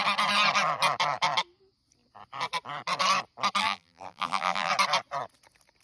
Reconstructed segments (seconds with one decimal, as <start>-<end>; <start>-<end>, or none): 3.6-4.7